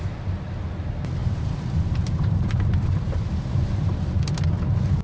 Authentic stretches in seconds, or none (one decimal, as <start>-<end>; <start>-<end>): 0.0-1.2; 4.2-5.0